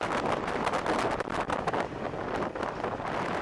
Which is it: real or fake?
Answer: real